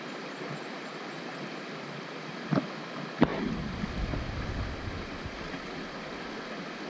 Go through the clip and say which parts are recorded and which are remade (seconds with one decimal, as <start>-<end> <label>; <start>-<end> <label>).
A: 0.0-6.9 recorded